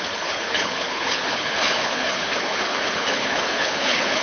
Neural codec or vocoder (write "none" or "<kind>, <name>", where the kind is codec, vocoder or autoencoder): codec, HILCodec